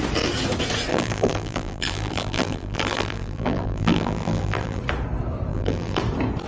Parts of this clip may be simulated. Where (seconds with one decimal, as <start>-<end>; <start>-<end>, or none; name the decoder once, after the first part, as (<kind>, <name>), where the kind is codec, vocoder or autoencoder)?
0.9-4.8 (vocoder, BigVGAN v2); 5.5-6.0